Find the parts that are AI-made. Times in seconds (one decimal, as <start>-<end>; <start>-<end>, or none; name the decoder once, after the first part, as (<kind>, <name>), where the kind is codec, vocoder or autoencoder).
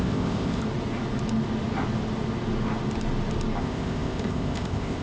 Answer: 0.0-0.6 (codec, ZipCodec); 3.6-5.0